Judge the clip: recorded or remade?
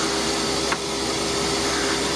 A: recorded